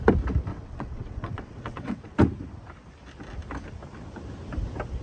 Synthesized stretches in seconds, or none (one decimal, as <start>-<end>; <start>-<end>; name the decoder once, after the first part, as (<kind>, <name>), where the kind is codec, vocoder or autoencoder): 0.5-2.1 (vocoder, WaveNeXt)